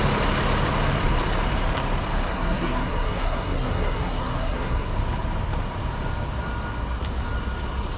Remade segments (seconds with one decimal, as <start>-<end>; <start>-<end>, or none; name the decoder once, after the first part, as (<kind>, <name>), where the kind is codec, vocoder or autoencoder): 2.3-4.9 (codec, SNAC)